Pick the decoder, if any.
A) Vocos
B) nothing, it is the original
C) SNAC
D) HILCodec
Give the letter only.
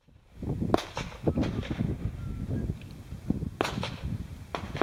B